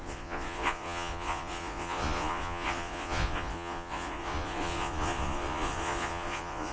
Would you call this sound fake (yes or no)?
yes